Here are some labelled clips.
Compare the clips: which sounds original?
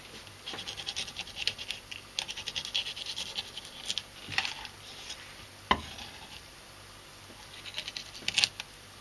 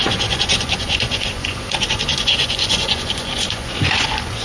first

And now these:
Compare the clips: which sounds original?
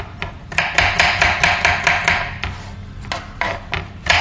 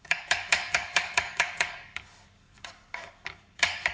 first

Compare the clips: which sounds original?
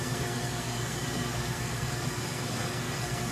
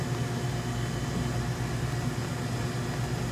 second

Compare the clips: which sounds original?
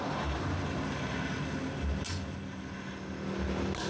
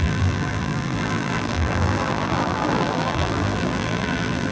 first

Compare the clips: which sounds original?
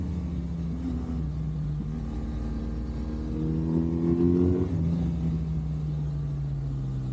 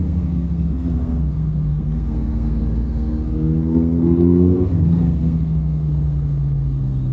first